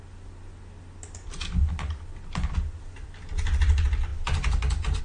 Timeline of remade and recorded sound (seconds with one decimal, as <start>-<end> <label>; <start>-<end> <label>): 0.0-5.0 recorded